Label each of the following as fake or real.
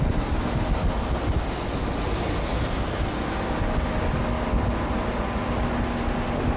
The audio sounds real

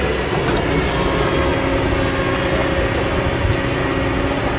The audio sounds real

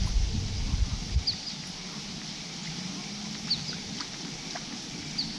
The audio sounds real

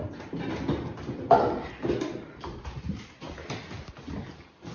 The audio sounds real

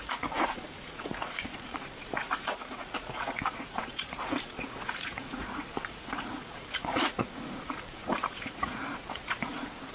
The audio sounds fake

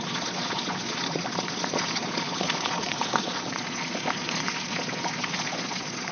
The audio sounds fake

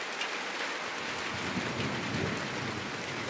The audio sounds real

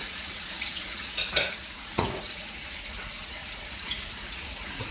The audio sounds fake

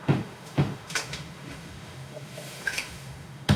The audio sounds fake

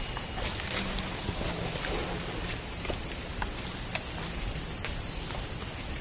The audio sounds real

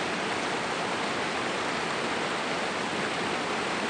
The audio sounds real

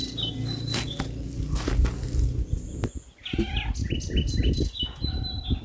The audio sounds real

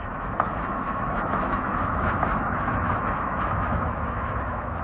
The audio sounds fake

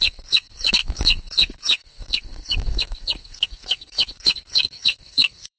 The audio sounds fake